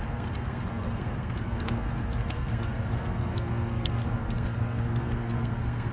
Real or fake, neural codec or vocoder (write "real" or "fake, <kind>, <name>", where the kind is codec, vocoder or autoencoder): fake, codec, SNAC